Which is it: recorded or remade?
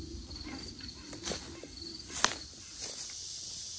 remade